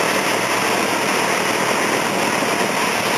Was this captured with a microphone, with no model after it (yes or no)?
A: yes